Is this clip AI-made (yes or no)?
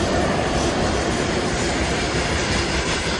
yes